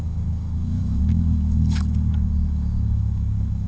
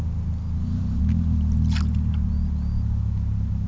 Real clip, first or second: second